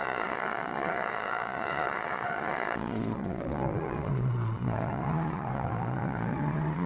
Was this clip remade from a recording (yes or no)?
yes